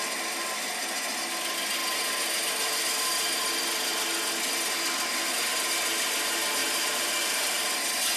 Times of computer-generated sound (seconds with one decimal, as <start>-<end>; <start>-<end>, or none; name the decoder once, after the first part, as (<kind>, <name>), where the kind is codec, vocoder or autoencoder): 6.6-7.6 (vocoder, BigVGAN v2)